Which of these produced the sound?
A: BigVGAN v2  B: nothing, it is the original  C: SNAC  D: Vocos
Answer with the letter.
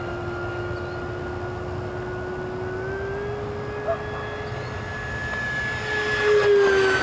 B